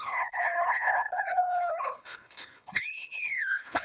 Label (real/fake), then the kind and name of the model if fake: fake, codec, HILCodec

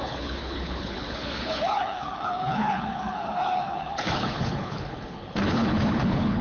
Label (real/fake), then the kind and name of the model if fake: fake, codec, HILCodec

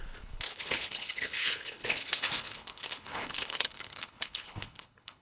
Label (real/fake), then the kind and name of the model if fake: fake, codec, HILCodec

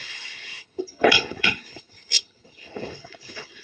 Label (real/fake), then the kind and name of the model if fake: fake, codec, HILCodec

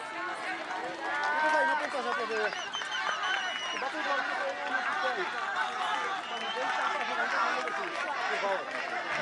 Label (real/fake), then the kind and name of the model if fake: real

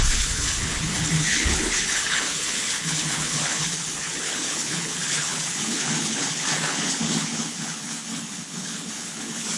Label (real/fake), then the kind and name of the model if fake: fake, codec, HILCodec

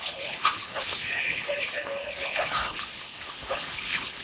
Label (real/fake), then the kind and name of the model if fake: fake, codec, HILCodec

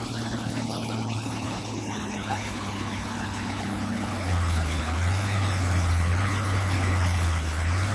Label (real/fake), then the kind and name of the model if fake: fake, codec, HILCodec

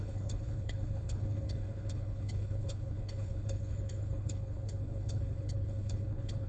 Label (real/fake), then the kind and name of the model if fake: fake, codec, HILCodec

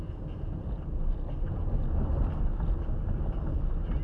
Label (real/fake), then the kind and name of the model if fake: real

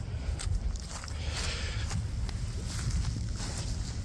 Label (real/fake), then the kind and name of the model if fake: real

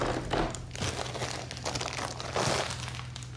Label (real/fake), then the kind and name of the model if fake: real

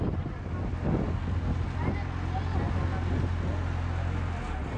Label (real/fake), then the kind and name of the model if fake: real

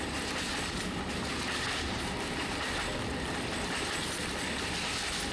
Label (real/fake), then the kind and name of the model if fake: real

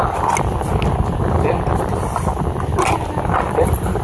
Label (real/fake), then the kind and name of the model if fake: real